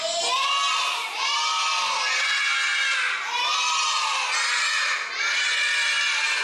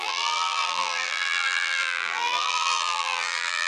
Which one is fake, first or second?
second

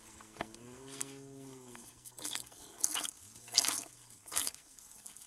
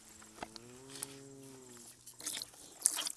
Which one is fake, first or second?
first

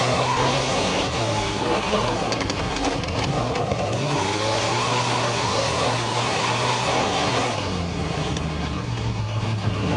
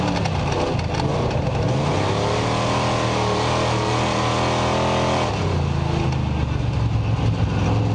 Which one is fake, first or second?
first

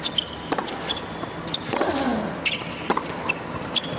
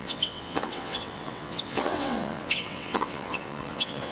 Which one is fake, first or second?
second